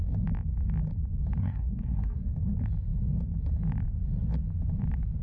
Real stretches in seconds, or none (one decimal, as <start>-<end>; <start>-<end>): 0.0-1.4; 2.3-5.2